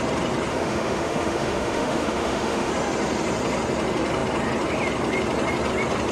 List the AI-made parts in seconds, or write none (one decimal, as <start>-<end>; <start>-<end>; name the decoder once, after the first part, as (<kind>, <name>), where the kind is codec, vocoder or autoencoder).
0.5-2.7 (autoencoder, DAC-VAE)